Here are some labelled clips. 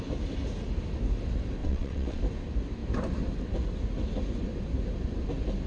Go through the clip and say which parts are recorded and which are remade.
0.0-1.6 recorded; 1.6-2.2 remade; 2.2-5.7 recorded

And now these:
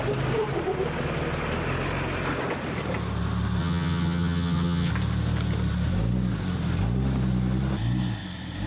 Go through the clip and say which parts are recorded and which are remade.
0.0-3.6 recorded; 3.6-4.9 remade; 4.9-8.7 recorded

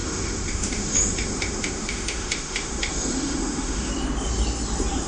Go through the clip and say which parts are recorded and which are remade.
0.0-3.9 remade; 3.9-5.1 recorded

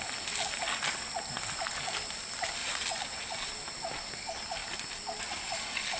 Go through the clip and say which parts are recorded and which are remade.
0.0-6.0 recorded

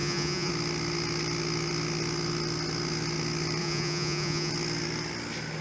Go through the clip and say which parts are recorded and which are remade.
0.0-0.5 remade; 0.5-3.6 recorded; 3.6-4.5 remade; 4.5-5.6 recorded

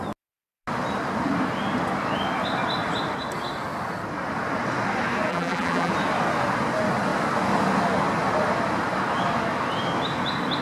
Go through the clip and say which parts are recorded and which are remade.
0.0-5.3 recorded; 5.3-5.9 remade; 5.9-10.6 recorded

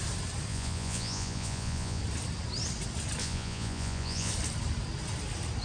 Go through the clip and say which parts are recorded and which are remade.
0.0-0.5 recorded; 0.5-2.0 remade; 2.0-3.2 recorded; 3.2-4.3 remade; 4.3-5.6 recorded